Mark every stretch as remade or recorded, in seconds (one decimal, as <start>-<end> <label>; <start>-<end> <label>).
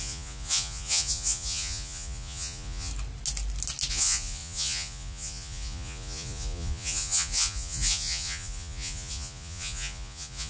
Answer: 0.0-2.9 remade; 2.9-3.9 recorded; 3.9-10.5 remade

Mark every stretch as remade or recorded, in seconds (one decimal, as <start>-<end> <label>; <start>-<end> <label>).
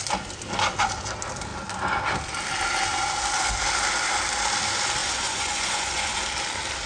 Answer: 0.0-5.0 recorded; 5.0-6.2 remade; 6.2-6.9 recorded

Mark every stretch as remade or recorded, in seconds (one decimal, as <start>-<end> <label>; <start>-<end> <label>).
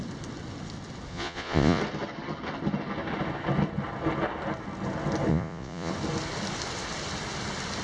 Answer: 0.0-1.1 recorded; 1.1-1.8 remade; 1.8-5.3 recorded; 5.3-5.9 remade; 5.9-7.8 recorded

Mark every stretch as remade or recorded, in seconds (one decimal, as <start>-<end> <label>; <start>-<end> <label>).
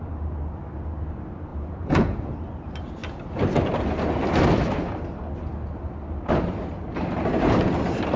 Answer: 0.0-1.5 recorded; 1.5-2.4 remade; 2.4-8.2 recorded